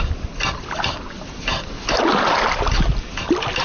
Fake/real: real